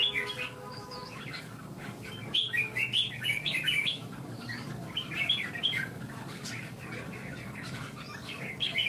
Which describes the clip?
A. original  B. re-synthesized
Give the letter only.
B